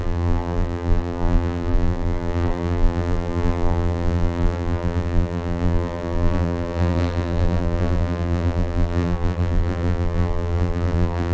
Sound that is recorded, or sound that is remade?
remade